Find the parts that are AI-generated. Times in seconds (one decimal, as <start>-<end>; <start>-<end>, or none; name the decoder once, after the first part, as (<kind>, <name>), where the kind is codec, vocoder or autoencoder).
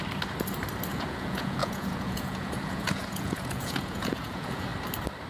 0.9-4.7 (vocoder, Vocos)